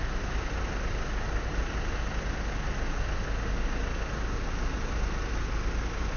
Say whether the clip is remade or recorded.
recorded